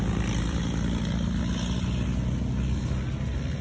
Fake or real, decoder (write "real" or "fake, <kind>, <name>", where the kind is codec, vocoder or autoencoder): real